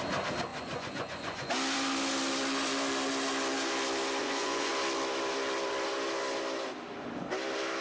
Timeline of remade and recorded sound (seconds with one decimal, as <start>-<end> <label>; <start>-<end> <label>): 0.0-0.5 recorded; 0.5-1.5 remade; 1.5-4.2 recorded; 4.2-4.7 remade; 4.7-7.8 recorded